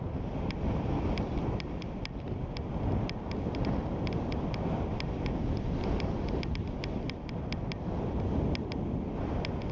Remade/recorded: recorded